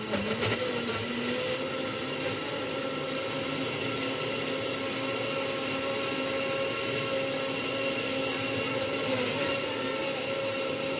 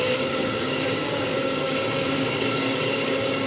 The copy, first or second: second